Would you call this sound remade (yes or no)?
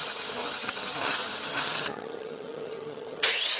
yes